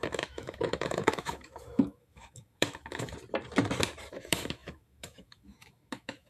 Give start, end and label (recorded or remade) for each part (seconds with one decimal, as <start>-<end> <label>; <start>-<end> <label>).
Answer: 0.0-3.1 remade; 3.1-4.1 recorded; 4.1-6.3 remade